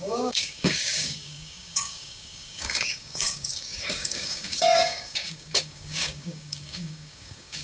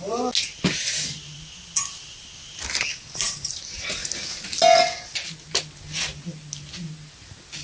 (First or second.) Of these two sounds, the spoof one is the first